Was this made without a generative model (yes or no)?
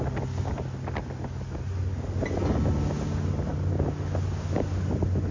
yes